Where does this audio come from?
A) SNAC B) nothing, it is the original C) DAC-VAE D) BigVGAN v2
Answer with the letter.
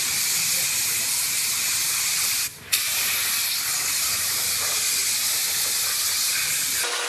B